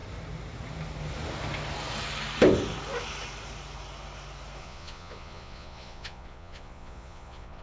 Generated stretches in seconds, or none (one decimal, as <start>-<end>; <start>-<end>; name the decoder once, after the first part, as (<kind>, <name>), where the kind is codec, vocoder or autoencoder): 4.6-7.6 (vocoder, Vocos)